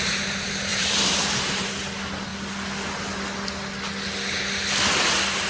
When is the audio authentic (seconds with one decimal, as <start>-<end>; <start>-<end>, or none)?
0.0-0.7; 1.7-5.5